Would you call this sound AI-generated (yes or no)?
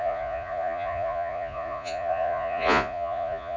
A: yes